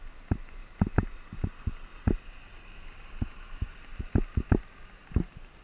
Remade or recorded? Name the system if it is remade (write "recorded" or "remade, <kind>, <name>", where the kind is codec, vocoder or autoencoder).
recorded